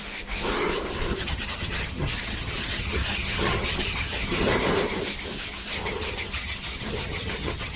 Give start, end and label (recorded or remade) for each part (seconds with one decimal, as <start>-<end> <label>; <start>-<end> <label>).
0.0-1.1 recorded; 1.1-4.5 remade; 4.5-5.8 recorded; 5.8-7.8 remade